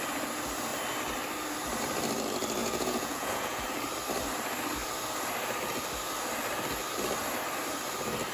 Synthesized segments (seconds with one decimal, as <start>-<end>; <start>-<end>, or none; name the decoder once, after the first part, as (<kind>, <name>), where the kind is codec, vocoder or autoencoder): 2.6-3.6 (vocoder, Vocos)